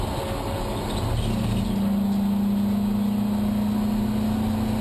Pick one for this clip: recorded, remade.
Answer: recorded